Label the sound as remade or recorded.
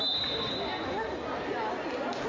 recorded